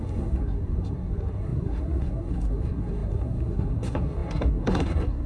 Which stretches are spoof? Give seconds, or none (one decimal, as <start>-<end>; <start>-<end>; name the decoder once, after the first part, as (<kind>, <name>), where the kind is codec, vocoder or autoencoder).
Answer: 0.0-5.3 (codec, SNAC)